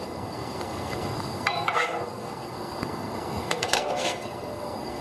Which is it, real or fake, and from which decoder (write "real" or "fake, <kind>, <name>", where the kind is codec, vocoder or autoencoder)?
fake, codec, SNAC